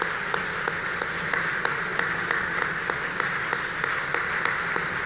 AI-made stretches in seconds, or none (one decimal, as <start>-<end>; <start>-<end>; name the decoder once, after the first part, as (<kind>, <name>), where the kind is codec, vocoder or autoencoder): none